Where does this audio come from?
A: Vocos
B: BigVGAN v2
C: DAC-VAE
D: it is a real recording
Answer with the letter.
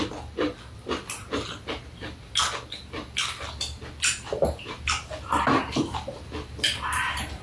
D